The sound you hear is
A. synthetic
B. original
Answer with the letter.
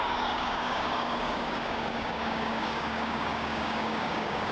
A